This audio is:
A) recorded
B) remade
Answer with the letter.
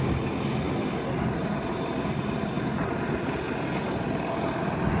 A